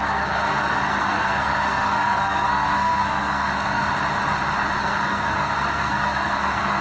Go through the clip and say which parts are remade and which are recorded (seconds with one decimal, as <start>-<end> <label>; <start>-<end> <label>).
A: 0.0-3.9 remade; 3.9-4.8 recorded; 4.8-6.8 remade